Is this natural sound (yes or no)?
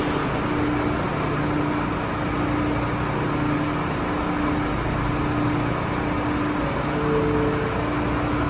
yes